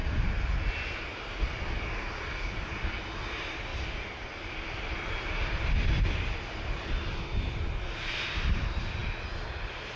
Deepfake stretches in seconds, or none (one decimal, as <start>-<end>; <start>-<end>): none